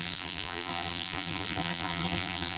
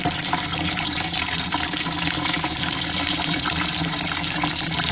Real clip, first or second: second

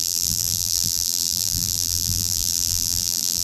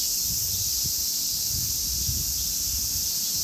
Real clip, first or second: second